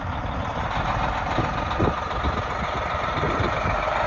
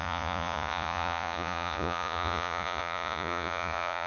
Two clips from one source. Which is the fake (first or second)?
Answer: second